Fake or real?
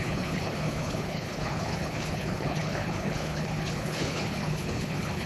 fake